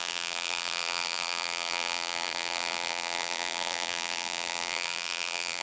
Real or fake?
fake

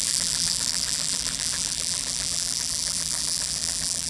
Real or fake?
fake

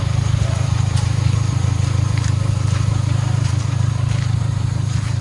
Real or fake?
fake